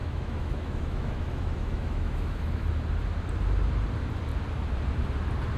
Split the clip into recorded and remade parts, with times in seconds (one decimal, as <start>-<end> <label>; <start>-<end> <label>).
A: 0.0-2.7 remade; 2.7-5.6 recorded

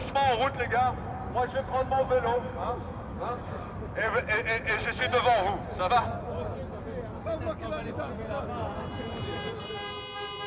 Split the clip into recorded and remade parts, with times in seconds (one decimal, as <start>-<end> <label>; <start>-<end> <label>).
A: 0.0-3.1 recorded; 3.1-3.7 remade; 3.7-10.5 recorded

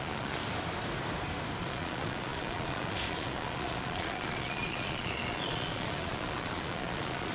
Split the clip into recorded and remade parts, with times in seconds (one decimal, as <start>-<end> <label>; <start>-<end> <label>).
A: 0.0-0.4 remade; 0.4-1.6 recorded; 1.6-7.3 remade

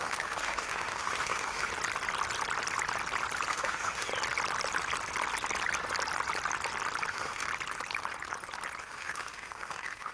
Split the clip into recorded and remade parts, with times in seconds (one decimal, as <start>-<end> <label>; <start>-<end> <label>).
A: 0.0-1.7 remade; 1.7-3.5 recorded; 3.5-4.1 remade; 4.1-7.1 recorded; 7.1-7.5 remade; 7.5-8.8 recorded; 8.8-10.1 remade

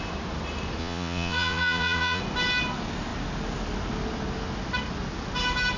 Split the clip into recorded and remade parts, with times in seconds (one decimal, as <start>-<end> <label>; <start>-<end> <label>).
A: 0.0-0.8 recorded; 0.8-2.2 remade; 2.2-5.8 recorded

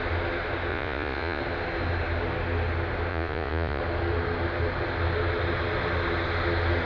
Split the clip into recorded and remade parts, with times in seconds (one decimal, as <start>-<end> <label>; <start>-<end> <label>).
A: 0.0-0.7 recorded; 0.7-1.4 remade; 1.4-3.1 recorded; 3.1-3.8 remade; 3.8-6.9 recorded